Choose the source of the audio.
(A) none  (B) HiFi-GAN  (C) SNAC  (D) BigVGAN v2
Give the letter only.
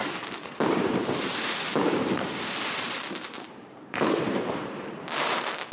D